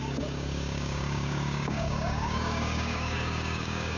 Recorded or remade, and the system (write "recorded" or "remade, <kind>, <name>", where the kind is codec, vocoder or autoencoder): remade, codec, DAC